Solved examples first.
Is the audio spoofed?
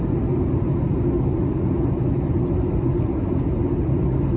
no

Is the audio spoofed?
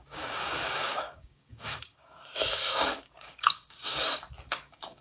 yes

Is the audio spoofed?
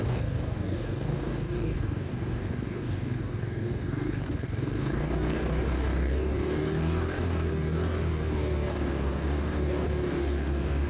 yes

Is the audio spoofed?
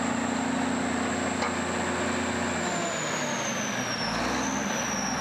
no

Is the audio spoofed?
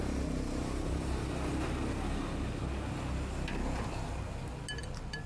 no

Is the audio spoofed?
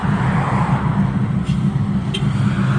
no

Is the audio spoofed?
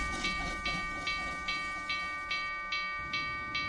no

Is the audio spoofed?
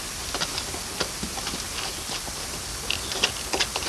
no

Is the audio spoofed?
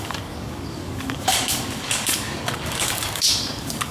yes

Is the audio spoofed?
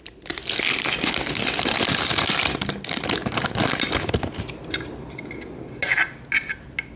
no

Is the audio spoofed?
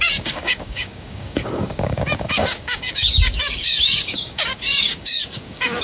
yes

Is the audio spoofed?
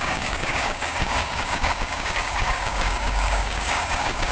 yes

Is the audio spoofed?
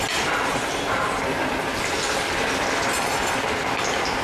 no